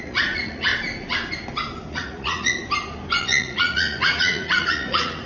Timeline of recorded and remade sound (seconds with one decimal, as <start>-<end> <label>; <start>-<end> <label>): 0.0-0.7 remade; 0.7-1.9 recorded; 1.9-2.6 remade; 2.6-3.2 recorded; 3.2-5.3 remade